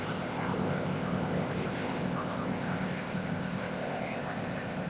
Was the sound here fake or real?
fake